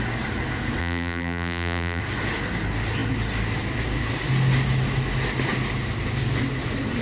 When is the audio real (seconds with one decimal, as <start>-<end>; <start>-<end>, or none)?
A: 0.0-0.8; 2.0-7.0